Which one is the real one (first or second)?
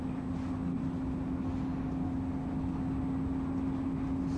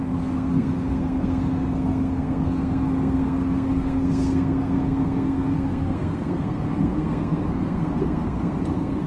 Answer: first